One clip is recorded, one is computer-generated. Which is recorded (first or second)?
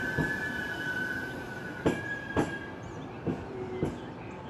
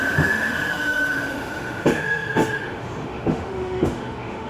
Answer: first